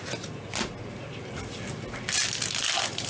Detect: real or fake real